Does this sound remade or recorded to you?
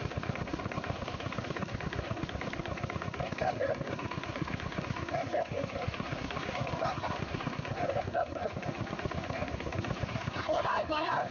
remade